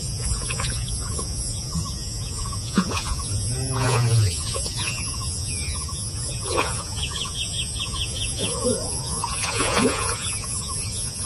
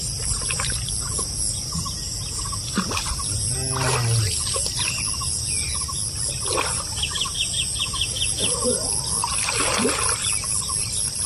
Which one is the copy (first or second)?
first